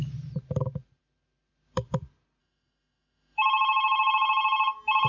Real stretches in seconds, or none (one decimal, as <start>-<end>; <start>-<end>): 0.0-2.4; 4.1-5.1